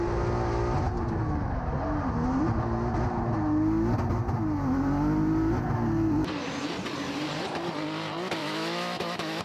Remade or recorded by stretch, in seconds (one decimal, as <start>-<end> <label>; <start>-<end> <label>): 0.0-8.4 recorded; 8.4-9.4 remade